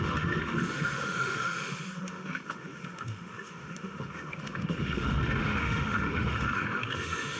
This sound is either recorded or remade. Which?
remade